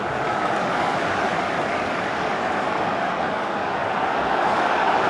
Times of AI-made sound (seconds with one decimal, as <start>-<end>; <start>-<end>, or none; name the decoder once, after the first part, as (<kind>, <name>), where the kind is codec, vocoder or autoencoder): 0.0-5.1 (codec, DAC)